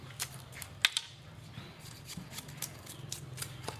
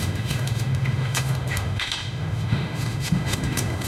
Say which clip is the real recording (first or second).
first